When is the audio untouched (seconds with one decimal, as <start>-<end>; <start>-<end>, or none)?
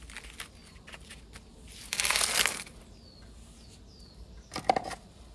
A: 0.0-5.3